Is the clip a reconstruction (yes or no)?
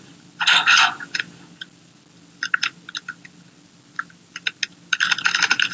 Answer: no